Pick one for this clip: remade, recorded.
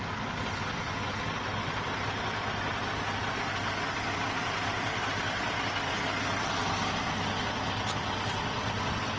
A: recorded